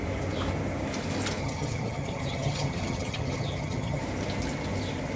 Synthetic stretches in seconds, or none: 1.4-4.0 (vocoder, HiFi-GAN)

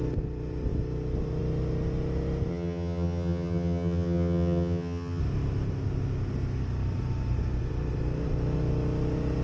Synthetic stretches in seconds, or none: 2.5-5.2 (vocoder, HiFi-GAN)

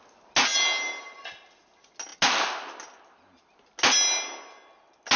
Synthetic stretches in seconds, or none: none

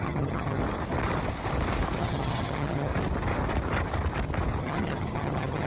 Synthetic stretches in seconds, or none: 0.0-0.6 (vocoder, HiFi-GAN); 2.0-2.9; 4.6-5.7

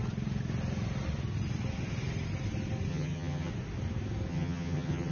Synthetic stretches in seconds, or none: 2.9-3.5 (vocoder, HiFi-GAN); 4.3-5.1

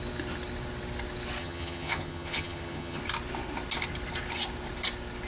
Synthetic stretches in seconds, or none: 1.4-3.0 (vocoder, HiFi-GAN)

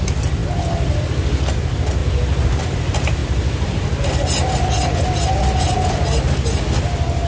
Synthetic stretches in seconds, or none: none